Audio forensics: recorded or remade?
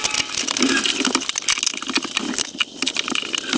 recorded